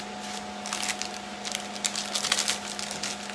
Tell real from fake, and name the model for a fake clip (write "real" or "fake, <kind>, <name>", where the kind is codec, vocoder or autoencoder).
real